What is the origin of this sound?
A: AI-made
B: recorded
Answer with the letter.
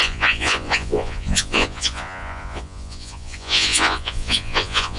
A